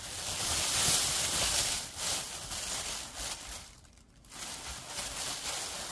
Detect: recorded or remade recorded